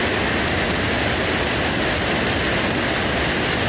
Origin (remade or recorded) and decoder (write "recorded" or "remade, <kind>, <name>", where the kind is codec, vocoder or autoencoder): recorded